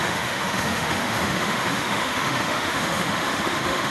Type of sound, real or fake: fake